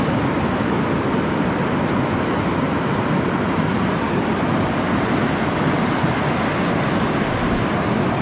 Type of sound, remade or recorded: recorded